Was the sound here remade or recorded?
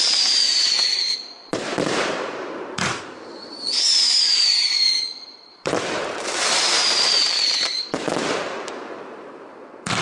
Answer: remade